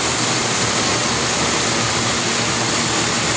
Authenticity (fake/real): real